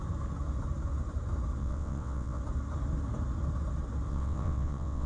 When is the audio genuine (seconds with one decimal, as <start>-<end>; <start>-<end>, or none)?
0.0-1.6; 2.4-4.1